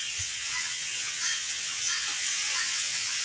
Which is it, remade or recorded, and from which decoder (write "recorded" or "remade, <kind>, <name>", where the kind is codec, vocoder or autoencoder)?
remade, vocoder, WaveNeXt